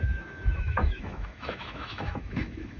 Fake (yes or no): yes